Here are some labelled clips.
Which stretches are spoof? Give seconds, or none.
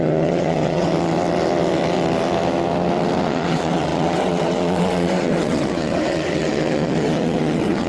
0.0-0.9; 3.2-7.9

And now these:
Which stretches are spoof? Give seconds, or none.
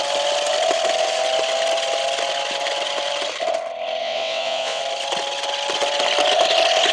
4.0-4.8